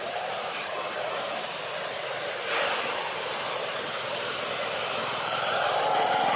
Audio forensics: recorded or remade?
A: recorded